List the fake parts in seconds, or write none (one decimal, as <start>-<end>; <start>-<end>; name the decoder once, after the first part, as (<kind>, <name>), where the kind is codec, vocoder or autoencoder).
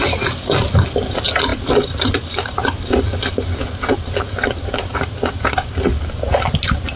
1.5-5.7 (vocoder, BigVGAN v2)